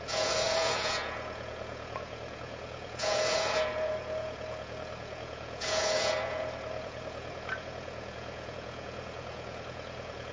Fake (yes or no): yes